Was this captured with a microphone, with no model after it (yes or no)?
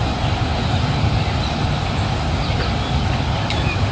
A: yes